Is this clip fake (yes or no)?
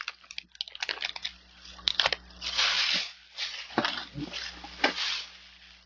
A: no